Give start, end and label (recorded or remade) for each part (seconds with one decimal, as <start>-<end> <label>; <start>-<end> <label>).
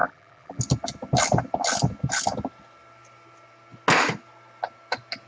0.0-0.6 remade; 0.6-5.3 recorded